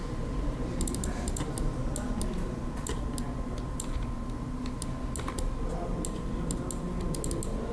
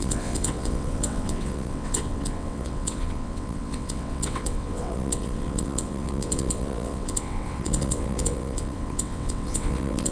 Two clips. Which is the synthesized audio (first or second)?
second